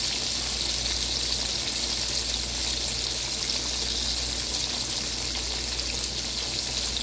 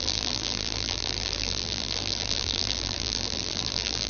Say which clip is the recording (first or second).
first